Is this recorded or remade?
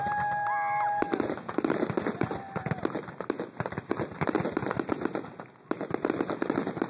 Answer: recorded